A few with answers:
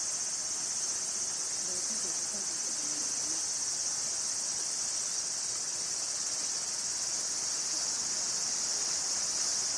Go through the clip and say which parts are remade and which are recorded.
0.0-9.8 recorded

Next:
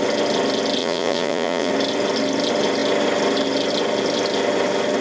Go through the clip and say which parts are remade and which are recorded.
0.0-0.8 recorded; 0.8-1.7 remade; 1.7-5.0 recorded

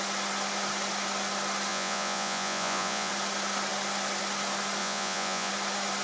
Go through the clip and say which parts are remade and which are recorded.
0.0-1.7 recorded; 1.7-3.1 remade; 3.1-4.8 recorded; 4.8-5.5 remade; 5.5-6.0 recorded

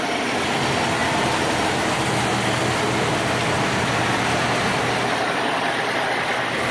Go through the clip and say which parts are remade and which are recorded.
0.0-6.7 recorded

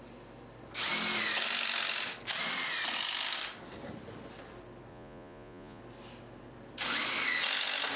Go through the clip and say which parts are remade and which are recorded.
0.0-4.9 recorded; 4.9-5.8 remade; 5.8-8.0 recorded

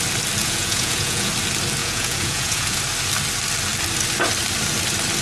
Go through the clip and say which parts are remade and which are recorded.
0.0-0.4 recorded; 0.4-1.3 remade; 1.3-1.8 recorded; 1.8-2.8 remade; 2.8-5.2 recorded